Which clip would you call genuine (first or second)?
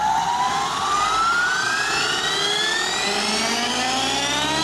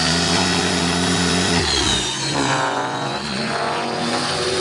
first